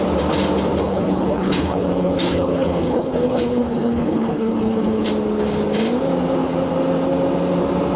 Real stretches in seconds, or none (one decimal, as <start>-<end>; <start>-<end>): 0.0-0.8; 5.1-8.0